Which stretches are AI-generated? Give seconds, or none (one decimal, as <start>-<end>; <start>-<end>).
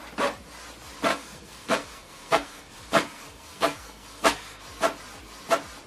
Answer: 1.1-4.6